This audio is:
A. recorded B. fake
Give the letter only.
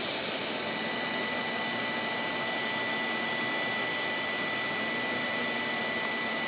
A